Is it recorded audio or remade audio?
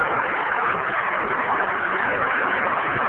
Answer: remade